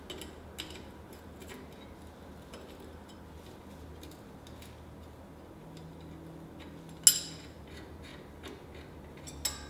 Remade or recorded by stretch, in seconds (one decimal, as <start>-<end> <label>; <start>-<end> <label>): 0.0-9.7 recorded

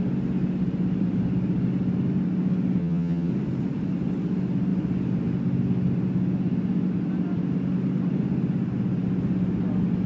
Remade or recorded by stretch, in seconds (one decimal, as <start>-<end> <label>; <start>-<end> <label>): 0.0-2.8 recorded; 2.8-3.3 remade; 3.3-10.1 recorded

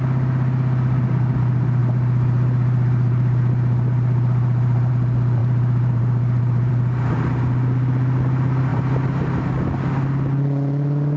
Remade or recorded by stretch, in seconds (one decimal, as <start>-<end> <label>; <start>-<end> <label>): 0.0-1.8 recorded; 1.8-4.9 remade; 4.9-5.4 recorded; 5.4-6.7 remade; 6.7-8.7 recorded; 8.7-9.5 remade; 9.5-11.2 recorded

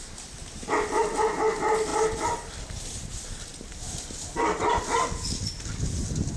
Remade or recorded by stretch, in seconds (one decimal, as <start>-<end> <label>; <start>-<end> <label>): 0.0-6.4 recorded

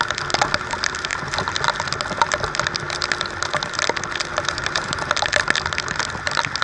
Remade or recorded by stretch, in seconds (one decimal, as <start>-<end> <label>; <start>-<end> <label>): 0.0-4.3 recorded; 4.3-5.1 remade; 5.1-6.6 recorded